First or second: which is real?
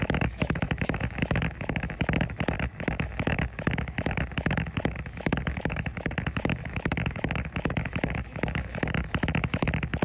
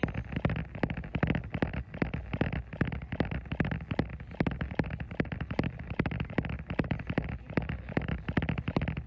second